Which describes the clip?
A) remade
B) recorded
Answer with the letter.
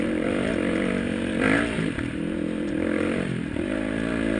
A